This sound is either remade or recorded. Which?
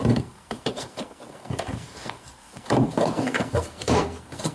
remade